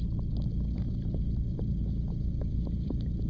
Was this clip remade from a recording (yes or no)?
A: no